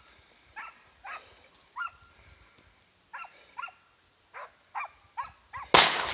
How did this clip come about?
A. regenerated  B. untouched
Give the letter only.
B